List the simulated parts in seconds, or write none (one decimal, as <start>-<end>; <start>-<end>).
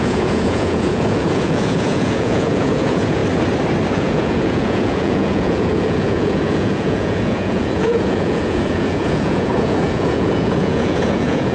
0.0-3.2; 3.9-11.5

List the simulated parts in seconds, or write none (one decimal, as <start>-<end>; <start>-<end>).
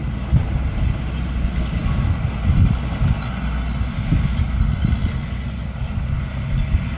none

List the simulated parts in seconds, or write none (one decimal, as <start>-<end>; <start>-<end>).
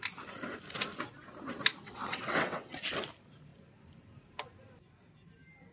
1.8-2.7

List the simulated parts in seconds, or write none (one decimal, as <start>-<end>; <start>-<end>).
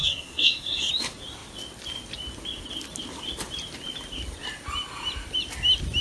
0.0-0.9